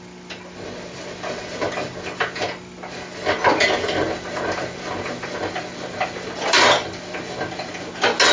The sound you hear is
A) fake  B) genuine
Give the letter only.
B